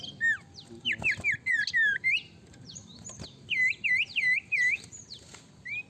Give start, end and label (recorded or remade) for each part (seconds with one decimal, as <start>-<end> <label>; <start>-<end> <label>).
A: 0.0-1.9 recorded; 1.9-5.4 remade; 5.4-5.9 recorded